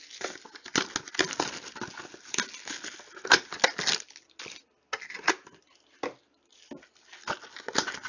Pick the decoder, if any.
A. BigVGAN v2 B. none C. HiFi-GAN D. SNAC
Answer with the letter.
B